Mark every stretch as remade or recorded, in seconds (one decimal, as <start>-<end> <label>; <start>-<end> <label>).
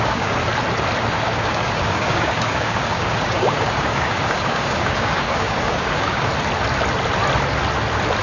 0.0-0.4 remade; 0.4-1.1 recorded; 1.1-6.3 remade; 6.3-8.2 recorded